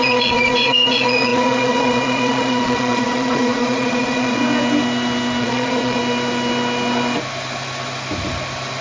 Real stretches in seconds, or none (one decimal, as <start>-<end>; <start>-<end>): 4.4-5.4; 6.0-8.8